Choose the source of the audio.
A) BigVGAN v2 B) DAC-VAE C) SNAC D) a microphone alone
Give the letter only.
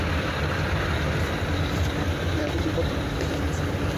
D